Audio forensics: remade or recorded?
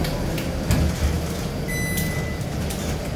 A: recorded